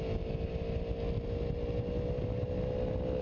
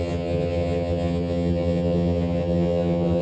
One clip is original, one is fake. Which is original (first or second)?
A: first